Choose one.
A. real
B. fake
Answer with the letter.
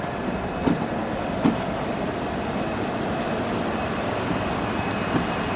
A